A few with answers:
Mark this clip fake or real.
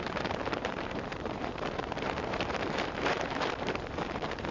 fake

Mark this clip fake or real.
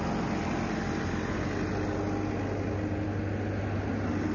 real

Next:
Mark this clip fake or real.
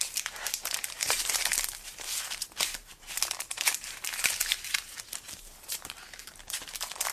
fake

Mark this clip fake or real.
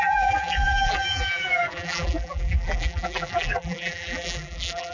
fake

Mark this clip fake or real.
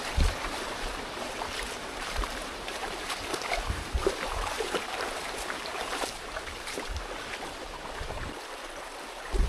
fake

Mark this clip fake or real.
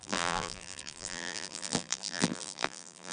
fake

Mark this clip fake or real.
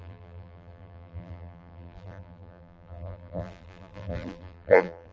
fake